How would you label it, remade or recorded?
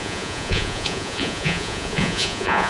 remade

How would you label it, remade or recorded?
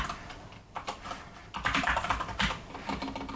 recorded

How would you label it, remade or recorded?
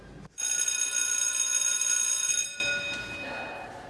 recorded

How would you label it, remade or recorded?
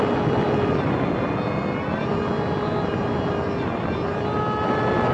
recorded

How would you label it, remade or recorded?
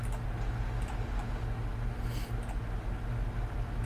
recorded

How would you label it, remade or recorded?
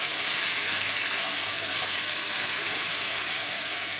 remade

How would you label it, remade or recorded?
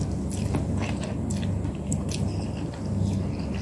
recorded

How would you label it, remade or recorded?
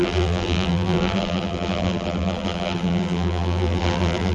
remade